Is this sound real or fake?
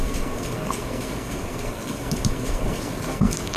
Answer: fake